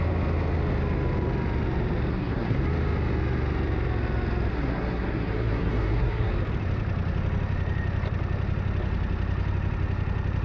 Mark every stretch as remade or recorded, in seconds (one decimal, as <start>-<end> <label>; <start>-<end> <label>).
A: 0.0-2.1 recorded; 2.1-2.6 remade; 2.6-4.5 recorded; 4.5-6.3 remade; 6.3-10.4 recorded